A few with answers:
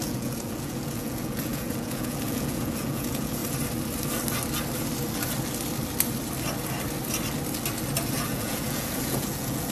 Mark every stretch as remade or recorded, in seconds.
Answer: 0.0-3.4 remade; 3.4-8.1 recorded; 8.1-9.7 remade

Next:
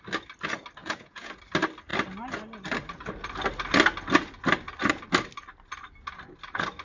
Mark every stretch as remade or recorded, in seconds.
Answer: 0.0-0.8 recorded; 0.8-1.4 remade; 1.4-6.8 recorded

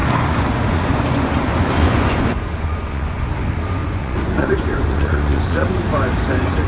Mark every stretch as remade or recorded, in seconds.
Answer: 0.0-3.3 remade; 3.3-3.8 recorded; 3.8-5.7 remade; 5.7-6.7 recorded

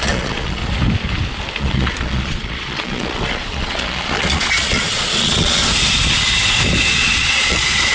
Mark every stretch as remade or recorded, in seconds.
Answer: 0.0-0.6 remade; 0.6-1.6 recorded; 1.6-5.6 remade; 5.6-6.9 recorded; 6.9-7.9 remade

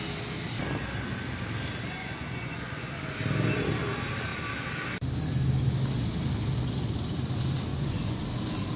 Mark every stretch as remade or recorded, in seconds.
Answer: 0.0-2.0 recorded; 2.0-2.9 remade; 2.9-7.7 recorded; 7.7-8.2 remade; 8.2-8.8 recorded